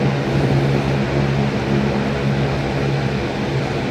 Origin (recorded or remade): recorded